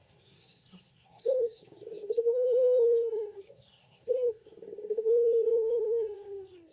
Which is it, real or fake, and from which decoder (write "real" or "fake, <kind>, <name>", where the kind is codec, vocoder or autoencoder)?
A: fake, codec, SNAC